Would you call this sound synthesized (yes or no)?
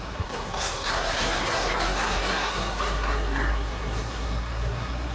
yes